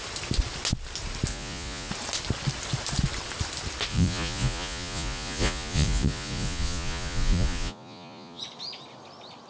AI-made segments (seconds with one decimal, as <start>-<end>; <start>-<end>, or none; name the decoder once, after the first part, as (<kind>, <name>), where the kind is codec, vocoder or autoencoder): 1.3-1.9 (vocoder, Vocos); 3.9-8.4